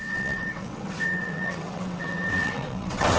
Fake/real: fake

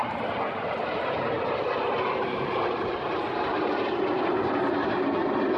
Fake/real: real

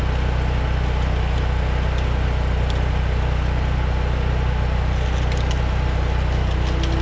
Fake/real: real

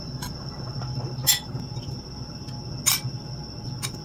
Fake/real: real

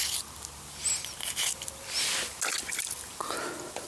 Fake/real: real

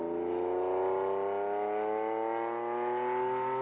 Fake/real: real